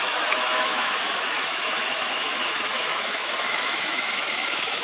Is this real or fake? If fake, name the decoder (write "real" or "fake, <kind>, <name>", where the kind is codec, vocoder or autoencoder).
fake, autoencoder, DAC-VAE